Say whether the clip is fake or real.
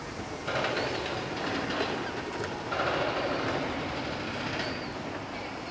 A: real